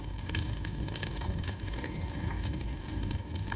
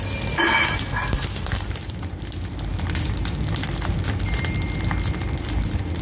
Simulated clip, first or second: first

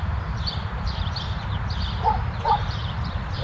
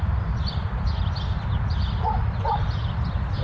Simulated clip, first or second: first